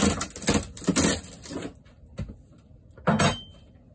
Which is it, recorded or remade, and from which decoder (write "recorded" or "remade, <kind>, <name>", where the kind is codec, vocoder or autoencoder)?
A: recorded